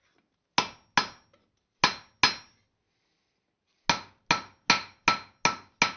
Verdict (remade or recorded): recorded